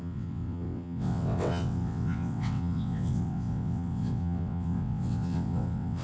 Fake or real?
fake